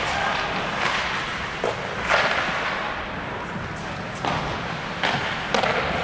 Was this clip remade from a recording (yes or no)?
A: no